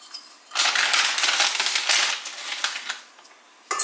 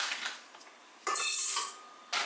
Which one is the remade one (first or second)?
second